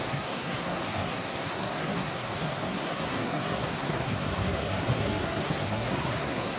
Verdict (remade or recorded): remade